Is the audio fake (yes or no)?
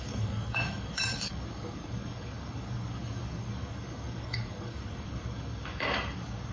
yes